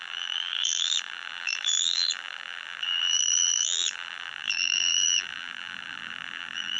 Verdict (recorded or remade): remade